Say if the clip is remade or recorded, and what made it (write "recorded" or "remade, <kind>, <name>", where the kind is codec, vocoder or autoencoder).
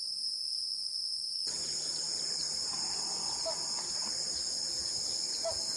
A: recorded